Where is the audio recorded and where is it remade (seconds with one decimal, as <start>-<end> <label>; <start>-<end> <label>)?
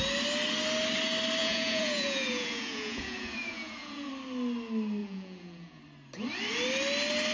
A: 0.0-1.4 recorded; 1.4-4.1 remade; 4.1-5.0 recorded; 5.0-5.8 remade; 5.8-7.3 recorded